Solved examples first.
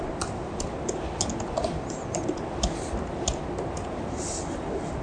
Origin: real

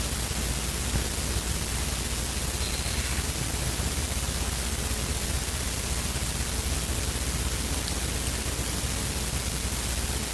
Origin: real